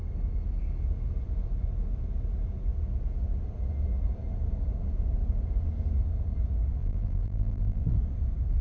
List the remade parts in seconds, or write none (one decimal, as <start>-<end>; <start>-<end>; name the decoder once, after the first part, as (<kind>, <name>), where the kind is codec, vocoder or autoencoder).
6.8-7.8 (vocoder, BigVGAN v2)